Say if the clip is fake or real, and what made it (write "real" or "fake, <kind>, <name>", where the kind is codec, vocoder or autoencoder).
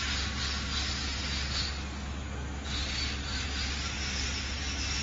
real